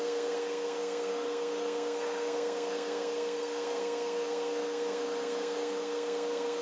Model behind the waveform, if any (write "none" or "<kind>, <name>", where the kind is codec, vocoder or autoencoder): codec, SNAC